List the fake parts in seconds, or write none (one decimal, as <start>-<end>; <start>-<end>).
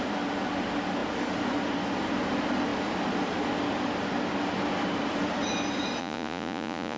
6.0-7.0